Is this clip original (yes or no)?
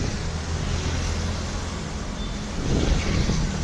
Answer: yes